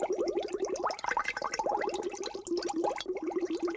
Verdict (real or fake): real